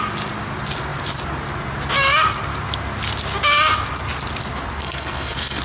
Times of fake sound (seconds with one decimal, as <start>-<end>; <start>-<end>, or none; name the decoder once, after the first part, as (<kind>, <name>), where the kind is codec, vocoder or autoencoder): 4.8-5.6 (codec, SNAC)